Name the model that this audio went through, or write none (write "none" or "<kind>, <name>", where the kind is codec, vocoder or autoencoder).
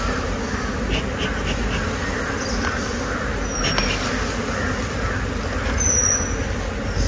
none